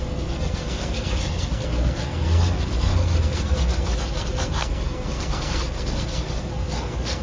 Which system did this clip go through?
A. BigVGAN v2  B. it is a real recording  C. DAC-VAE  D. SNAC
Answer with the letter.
D